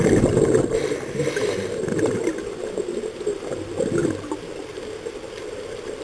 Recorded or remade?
recorded